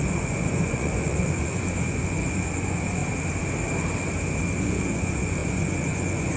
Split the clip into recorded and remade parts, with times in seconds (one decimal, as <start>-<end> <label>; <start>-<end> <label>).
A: 0.0-3.0 remade; 3.0-4.6 recorded; 4.6-6.4 remade

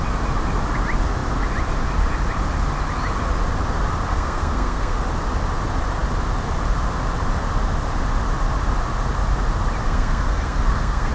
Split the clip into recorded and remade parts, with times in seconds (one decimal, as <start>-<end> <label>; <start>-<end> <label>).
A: 0.0-4.1 recorded; 4.1-5.0 remade; 5.0-9.8 recorded; 9.8-11.1 remade

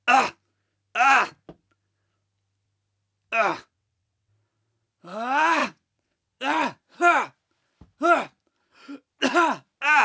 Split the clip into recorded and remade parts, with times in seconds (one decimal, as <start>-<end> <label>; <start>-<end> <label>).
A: 0.0-3.5 recorded; 3.5-4.3 remade; 4.3-5.6 recorded; 5.6-6.8 remade; 6.8-10.0 recorded

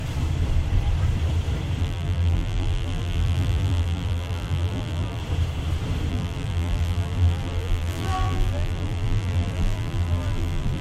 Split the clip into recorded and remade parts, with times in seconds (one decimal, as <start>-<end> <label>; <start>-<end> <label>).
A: 0.0-1.8 recorded; 1.8-5.2 remade; 5.2-6.1 recorded; 6.1-10.8 remade